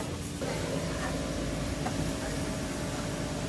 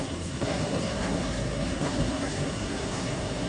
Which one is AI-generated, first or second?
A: second